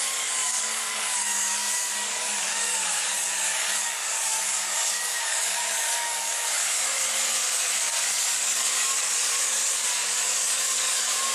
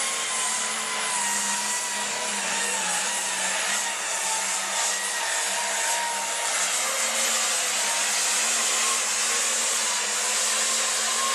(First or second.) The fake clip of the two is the first